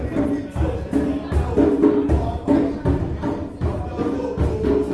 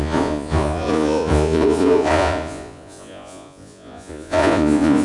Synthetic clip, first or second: second